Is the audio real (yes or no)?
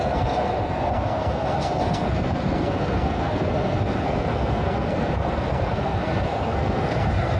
no